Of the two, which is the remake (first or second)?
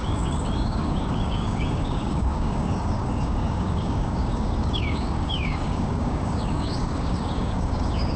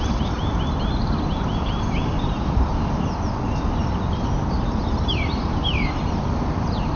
first